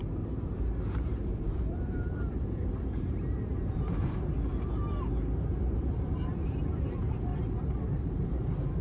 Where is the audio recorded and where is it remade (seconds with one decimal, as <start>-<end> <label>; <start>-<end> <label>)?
0.0-4.5 remade; 4.5-5.0 recorded; 5.0-7.3 remade; 7.3-7.9 recorded; 7.9-8.8 remade